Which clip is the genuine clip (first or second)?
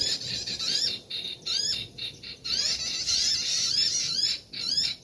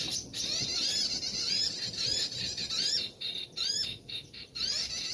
second